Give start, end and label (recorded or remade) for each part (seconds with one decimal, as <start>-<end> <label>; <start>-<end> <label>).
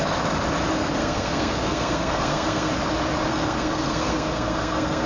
0.0-1.0 recorded; 1.0-2.7 remade; 2.7-3.3 recorded; 3.3-5.1 remade